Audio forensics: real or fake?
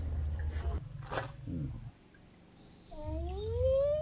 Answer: real